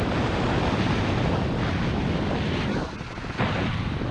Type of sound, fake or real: real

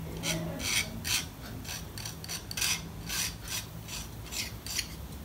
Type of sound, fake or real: real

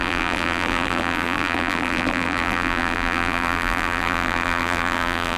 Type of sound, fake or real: fake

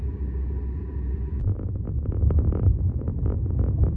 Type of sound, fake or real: fake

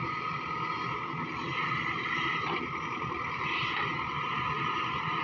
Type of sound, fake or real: real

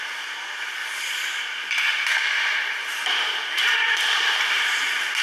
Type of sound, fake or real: real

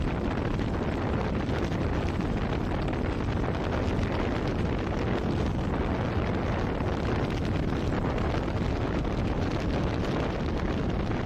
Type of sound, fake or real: real